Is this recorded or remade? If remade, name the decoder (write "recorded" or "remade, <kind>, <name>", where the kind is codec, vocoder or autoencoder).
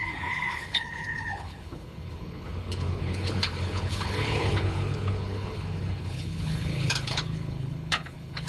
remade, codec, HILCodec